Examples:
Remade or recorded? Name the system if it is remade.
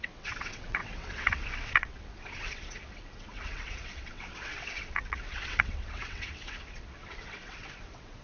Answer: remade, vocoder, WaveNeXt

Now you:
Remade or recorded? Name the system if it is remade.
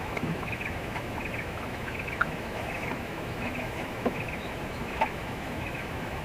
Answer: remade, autoencoder, DAC-VAE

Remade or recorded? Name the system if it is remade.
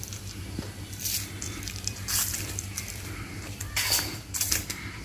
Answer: remade, vocoder, BigVGAN v2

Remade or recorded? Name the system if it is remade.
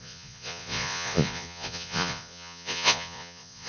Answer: remade, vocoder, Vocos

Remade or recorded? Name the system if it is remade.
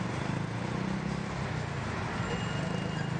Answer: recorded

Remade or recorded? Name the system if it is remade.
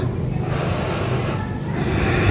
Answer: recorded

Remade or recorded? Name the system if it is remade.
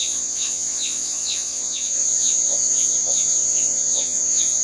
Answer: remade, vocoder, Vocos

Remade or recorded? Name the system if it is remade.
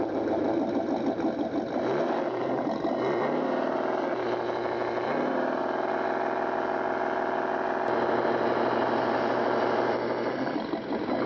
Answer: recorded